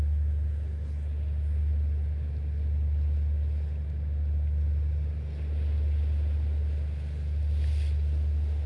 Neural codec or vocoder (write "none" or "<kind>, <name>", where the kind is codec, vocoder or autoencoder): none